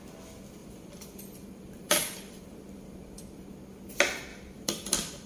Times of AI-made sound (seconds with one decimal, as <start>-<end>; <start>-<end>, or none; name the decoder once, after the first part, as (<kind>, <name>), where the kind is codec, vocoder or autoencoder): 0.6-3.2 (vocoder, BigVGAN v2); 4.3-5.3